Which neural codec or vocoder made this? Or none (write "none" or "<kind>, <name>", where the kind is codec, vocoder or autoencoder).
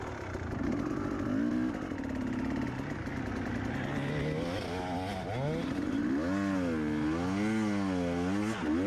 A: none